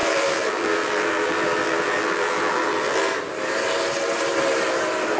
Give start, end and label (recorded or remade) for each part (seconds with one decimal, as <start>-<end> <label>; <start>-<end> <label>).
0.0-3.1 remade; 3.1-5.2 recorded